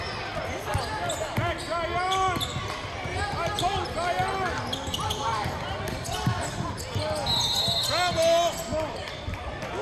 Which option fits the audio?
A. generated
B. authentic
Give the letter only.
B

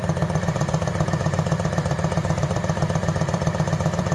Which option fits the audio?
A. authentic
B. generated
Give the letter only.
B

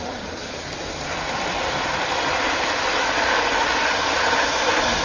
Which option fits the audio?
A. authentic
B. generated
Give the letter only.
B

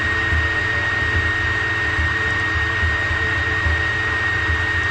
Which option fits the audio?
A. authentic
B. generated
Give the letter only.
B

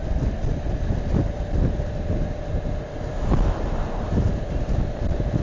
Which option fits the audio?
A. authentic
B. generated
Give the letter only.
A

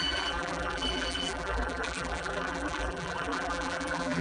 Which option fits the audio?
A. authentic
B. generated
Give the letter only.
B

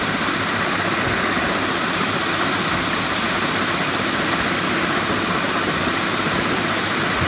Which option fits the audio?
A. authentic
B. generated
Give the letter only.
A